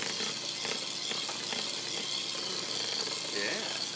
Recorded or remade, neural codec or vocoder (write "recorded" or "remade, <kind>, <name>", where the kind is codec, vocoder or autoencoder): recorded